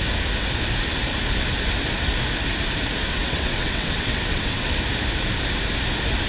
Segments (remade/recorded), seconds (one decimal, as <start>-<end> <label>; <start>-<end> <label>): 0.0-3.1 recorded; 3.1-4.8 remade; 4.8-6.3 recorded